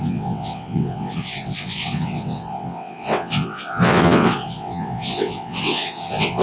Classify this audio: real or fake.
fake